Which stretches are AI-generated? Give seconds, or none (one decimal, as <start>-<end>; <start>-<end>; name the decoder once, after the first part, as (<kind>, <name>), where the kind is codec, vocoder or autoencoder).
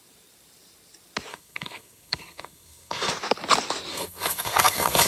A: 1.3-3.1 (codec, SNAC); 3.9-5.1